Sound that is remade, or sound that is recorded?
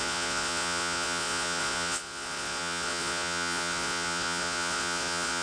remade